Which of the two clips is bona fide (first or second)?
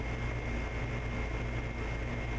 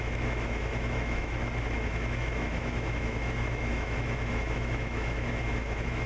first